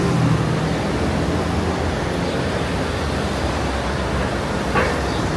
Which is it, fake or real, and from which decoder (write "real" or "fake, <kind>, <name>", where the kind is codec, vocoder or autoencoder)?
real